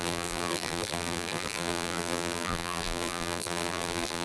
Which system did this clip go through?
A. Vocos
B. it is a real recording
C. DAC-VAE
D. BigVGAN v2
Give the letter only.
D